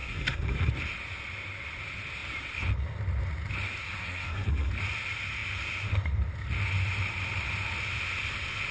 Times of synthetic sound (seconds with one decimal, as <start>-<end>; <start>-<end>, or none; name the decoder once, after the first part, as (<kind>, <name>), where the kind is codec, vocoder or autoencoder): 0.0-0.7 (codec, SNAC); 3.8-4.7